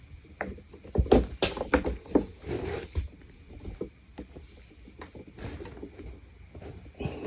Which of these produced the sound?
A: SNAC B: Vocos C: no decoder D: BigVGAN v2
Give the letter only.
C